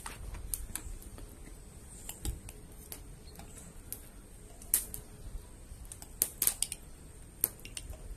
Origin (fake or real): real